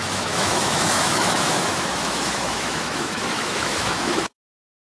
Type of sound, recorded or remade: remade